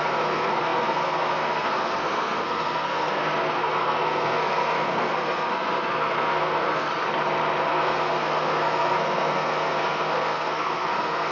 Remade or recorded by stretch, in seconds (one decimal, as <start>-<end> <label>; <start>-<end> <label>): 0.0-6.9 remade; 6.9-7.7 recorded; 7.7-11.3 remade